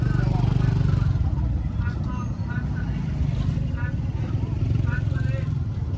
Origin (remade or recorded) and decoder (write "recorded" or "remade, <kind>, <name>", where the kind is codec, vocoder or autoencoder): recorded